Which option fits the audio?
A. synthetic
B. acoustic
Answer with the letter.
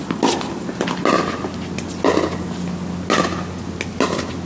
B